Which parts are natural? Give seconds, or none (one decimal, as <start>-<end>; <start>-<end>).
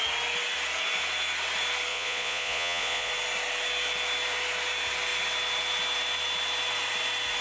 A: 0.0-1.9; 3.1-7.4